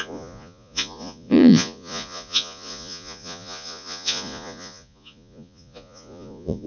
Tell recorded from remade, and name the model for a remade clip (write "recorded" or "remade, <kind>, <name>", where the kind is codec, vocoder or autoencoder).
remade, vocoder, Vocos